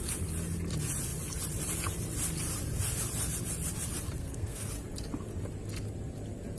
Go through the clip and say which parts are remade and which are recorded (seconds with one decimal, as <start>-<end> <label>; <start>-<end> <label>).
0.0-4.2 recorded; 4.2-4.7 remade; 4.7-6.6 recorded